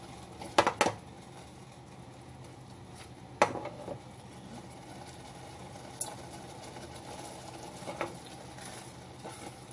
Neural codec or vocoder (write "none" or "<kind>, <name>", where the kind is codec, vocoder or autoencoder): none